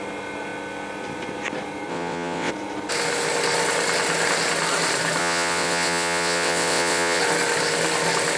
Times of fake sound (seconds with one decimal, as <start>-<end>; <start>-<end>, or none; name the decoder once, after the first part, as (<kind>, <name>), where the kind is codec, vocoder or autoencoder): 1.9-2.5 (vocoder, WaveNeXt); 5.2-7.2